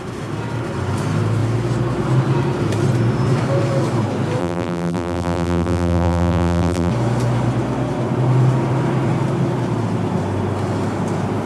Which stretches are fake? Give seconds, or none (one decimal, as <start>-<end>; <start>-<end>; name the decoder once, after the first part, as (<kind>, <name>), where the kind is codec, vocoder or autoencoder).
4.4-6.9 (vocoder, BigVGAN v2)